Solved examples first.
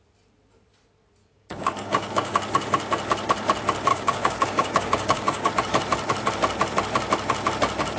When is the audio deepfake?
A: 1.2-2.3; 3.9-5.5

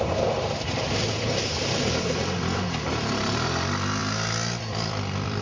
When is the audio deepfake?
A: 0.0-5.4

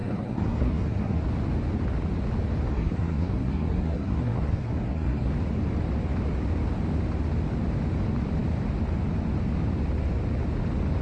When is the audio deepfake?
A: 0.0-1.2; 2.7-5.3